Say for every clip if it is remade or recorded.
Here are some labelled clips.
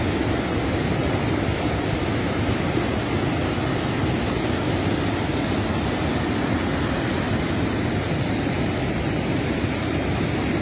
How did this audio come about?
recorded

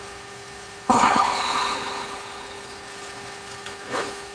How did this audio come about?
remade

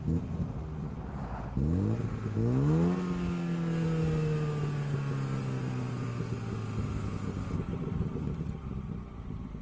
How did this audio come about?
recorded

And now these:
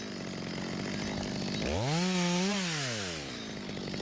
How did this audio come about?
recorded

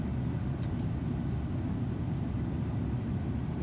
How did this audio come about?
recorded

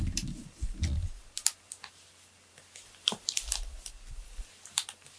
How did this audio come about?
recorded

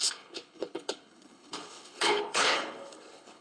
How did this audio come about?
remade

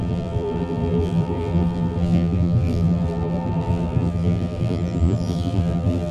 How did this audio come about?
remade